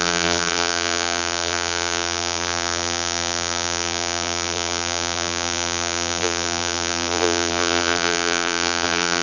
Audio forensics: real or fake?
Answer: fake